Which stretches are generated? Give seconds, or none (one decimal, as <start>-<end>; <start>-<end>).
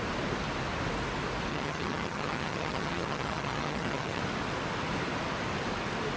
1.5-4.2